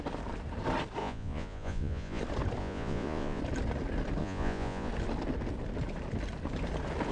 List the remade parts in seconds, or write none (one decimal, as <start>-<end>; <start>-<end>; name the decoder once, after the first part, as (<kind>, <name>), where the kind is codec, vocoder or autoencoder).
1.0-2.2 (vocoder, Vocos); 2.6-3.4; 4.2-4.9